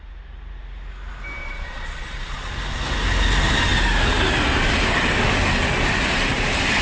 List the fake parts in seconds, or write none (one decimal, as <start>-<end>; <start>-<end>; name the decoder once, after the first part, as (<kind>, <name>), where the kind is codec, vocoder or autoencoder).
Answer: 1.4-2.5 (vocoder, Vocos)